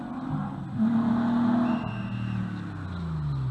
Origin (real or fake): real